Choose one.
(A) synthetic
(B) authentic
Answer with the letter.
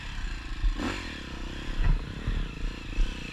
B